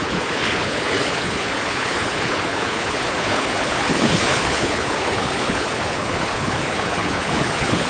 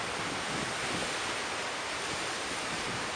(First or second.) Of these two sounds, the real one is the second